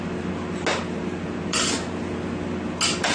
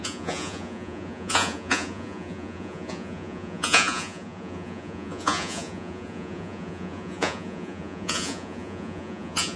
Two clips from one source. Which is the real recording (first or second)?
first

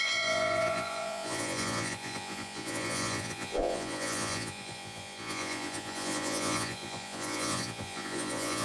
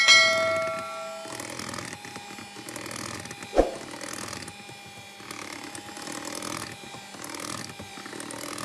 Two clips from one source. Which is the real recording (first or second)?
second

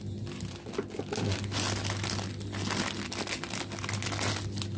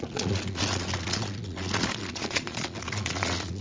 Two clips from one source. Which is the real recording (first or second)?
first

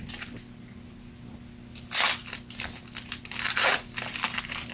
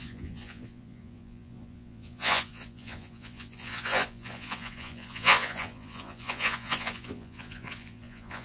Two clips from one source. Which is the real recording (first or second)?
first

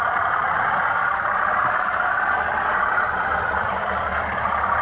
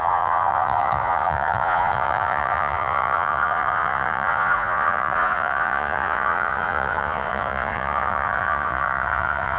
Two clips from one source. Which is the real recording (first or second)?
first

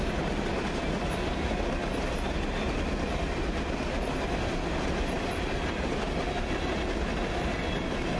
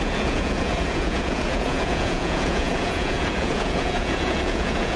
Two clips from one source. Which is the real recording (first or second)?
first